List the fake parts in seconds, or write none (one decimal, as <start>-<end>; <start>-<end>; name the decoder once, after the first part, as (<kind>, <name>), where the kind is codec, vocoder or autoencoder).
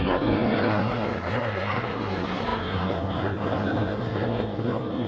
0.0-5.1 (codec, SNAC)